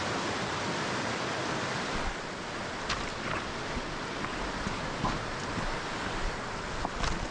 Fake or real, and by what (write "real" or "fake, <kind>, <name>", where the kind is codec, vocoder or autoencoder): real